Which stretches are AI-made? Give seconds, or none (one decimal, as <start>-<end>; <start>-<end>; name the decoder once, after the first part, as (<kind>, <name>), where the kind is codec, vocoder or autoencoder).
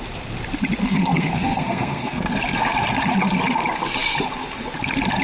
0.8-2.3 (codec, SNAC)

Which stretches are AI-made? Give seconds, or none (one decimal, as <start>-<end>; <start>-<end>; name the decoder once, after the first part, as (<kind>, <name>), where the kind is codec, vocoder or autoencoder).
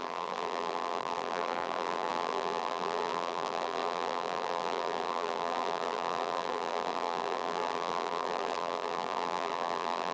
0.0-10.1 (vocoder, BigVGAN v2)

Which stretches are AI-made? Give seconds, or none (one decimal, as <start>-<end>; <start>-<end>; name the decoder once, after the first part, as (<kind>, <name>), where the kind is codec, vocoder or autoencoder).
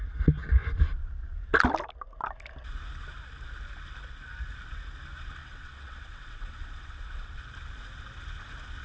5.4-7.4 (vocoder, WaveNeXt)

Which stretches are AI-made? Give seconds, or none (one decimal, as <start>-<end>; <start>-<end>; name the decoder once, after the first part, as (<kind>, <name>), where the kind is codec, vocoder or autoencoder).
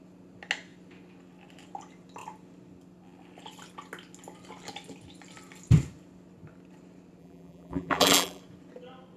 7.2-8.4 (vocoder, BigVGAN v2)